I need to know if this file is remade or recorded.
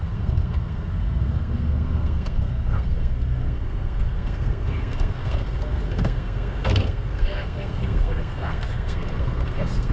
remade